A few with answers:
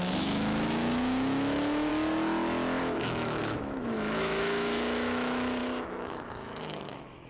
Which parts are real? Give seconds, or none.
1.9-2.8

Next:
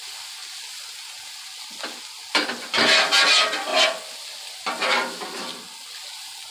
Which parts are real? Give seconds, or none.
0.0-6.5

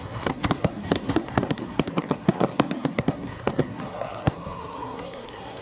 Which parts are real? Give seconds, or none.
none

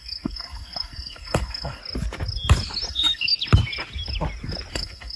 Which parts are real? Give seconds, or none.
1.8-2.9; 3.3-4.7